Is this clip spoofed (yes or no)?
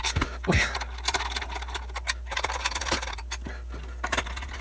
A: no